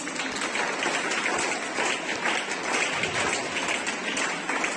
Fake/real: real